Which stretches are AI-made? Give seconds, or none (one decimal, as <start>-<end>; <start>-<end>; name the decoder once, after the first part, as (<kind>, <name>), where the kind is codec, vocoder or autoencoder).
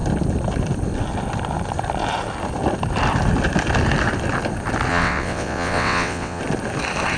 4.9-6.4 (vocoder, WaveNeXt)